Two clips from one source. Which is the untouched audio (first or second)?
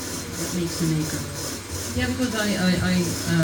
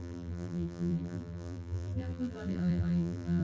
first